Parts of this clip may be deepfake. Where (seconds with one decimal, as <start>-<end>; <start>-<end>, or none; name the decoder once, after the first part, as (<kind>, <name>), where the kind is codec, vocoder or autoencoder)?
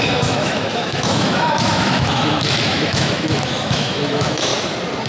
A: 0.0-4.5 (autoencoder, DAC-VAE)